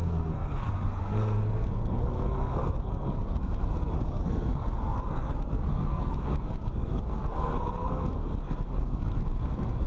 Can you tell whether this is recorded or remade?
remade